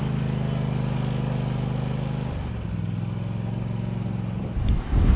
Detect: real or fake real